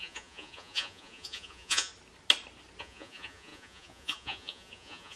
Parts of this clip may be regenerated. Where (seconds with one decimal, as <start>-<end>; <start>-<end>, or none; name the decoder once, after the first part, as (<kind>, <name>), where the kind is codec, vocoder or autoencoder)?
0.0-1.9 (vocoder, Vocos); 2.8-5.2